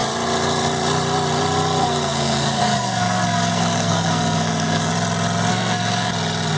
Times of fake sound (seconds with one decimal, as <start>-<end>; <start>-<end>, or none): 1.8-4.9; 5.5-6.1